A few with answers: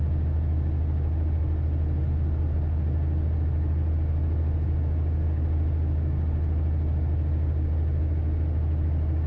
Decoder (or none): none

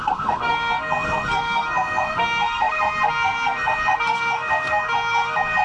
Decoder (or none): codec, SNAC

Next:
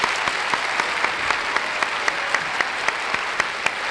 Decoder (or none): none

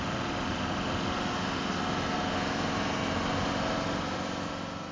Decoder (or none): none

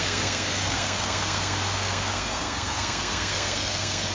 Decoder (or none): codec, SNAC